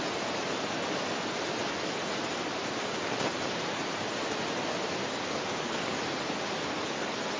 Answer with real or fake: real